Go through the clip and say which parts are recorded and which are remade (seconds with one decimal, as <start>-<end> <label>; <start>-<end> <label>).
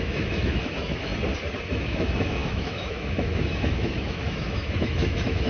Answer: 0.0-1.1 remade; 1.1-1.7 recorded; 1.7-5.5 remade